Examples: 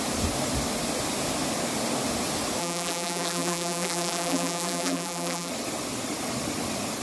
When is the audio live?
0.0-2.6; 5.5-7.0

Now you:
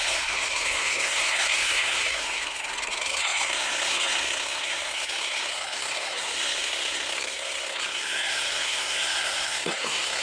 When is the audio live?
none

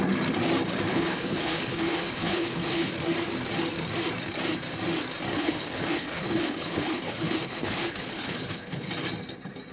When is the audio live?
0.0-0.9; 2.9-5.3; 8.9-9.7

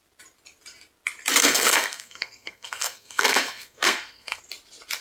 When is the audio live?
0.0-1.4; 4.4-5.0

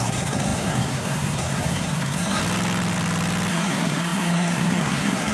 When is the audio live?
2.4-3.5

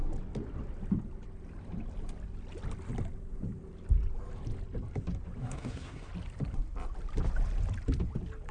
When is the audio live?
0.0-5.4; 6.1-8.5

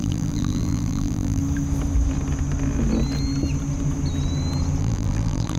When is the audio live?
1.4-4.8